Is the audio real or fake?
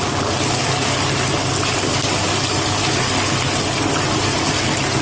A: real